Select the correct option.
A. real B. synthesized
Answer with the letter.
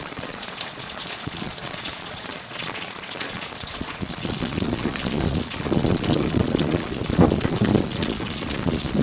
B